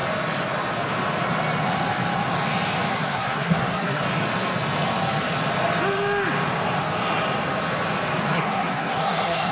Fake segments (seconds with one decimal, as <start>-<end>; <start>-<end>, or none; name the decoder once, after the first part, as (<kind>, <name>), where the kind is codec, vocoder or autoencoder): 2.9-4.0 (codec, SNAC); 8.3-9.5